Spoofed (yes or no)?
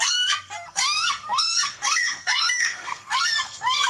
yes